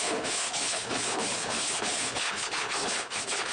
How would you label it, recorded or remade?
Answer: remade